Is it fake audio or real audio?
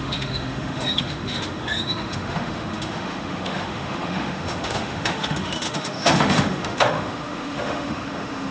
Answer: fake